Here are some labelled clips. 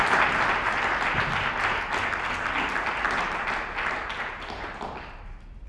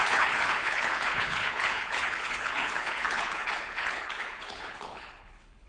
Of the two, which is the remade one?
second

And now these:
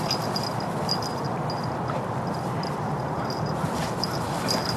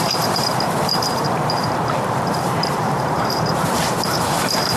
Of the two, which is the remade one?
second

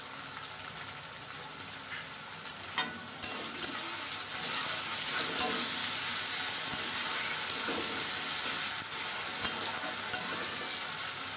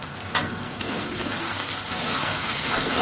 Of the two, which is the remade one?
second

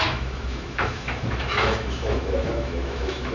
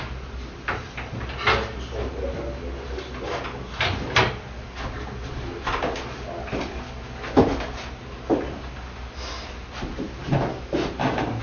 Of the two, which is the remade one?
first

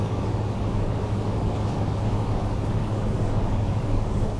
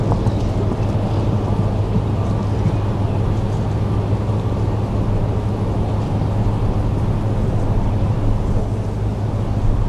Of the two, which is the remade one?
first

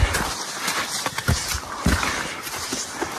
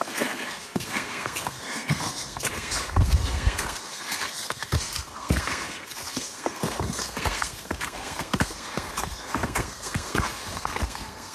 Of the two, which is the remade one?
second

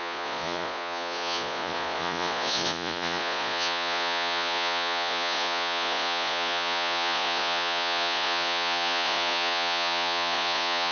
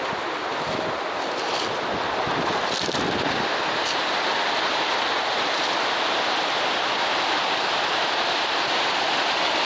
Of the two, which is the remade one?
first